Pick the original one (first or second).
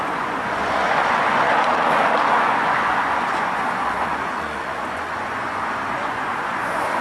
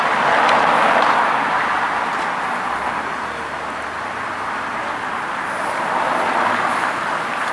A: second